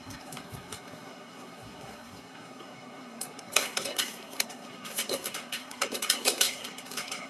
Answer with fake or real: fake